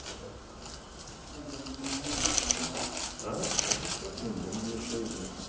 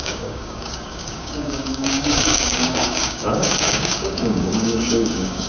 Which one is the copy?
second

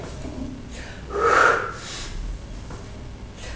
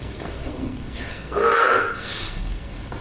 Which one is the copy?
second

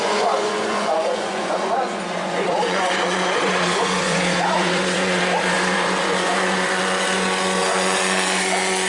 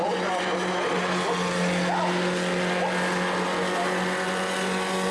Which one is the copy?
first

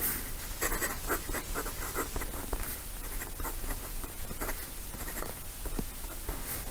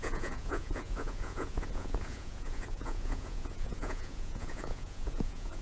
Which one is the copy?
second